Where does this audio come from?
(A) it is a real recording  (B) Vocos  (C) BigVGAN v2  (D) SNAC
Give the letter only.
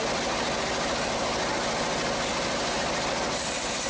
A